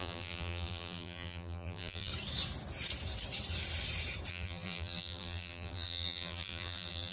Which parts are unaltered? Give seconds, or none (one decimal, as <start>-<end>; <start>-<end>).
2.1-4.3